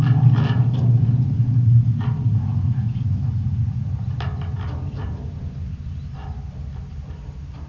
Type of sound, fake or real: real